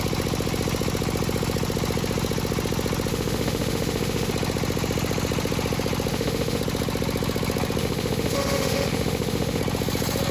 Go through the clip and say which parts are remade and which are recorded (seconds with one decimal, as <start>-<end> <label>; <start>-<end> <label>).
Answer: 0.0-3.1 recorded; 3.1-4.3 remade; 4.3-6.1 recorded; 6.1-6.6 remade; 6.6-7.8 recorded; 7.8-9.6 remade; 9.6-10.3 recorded